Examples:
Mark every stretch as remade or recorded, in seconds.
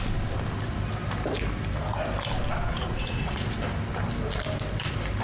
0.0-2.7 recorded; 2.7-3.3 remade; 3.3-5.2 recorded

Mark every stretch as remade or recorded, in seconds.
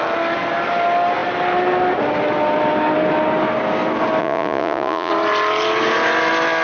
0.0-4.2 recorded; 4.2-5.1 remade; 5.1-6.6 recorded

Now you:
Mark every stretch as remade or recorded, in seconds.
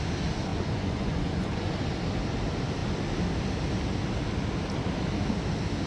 0.0-0.5 recorded; 0.5-1.7 remade; 1.7-5.9 recorded